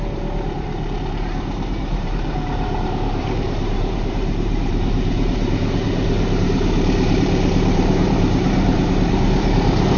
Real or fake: fake